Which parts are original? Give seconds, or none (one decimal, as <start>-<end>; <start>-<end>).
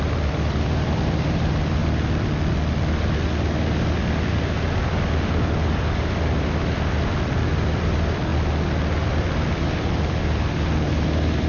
1.8-4.5; 8.3-9.2